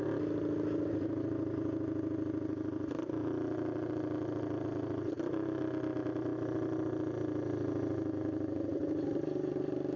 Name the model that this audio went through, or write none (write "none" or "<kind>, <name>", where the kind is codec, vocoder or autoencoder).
none